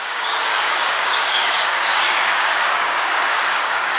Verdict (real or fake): fake